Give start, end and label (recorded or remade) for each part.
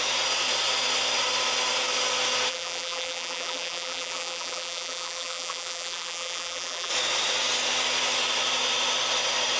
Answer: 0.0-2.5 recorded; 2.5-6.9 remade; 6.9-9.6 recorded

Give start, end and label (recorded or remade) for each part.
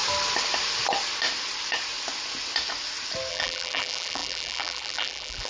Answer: 0.0-3.3 recorded; 3.3-5.5 remade